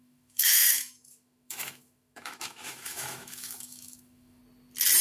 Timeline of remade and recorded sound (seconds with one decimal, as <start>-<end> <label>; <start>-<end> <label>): 0.0-4.4 remade; 4.4-5.0 recorded